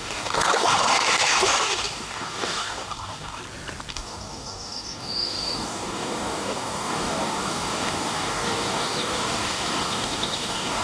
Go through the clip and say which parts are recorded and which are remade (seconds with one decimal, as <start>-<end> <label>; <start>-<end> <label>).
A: 0.0-3.4 remade; 3.4-3.9 recorded; 3.9-10.8 remade